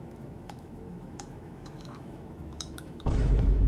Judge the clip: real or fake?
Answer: fake